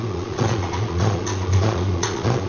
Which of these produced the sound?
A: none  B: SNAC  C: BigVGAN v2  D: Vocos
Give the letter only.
D